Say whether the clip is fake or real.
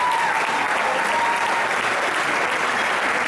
real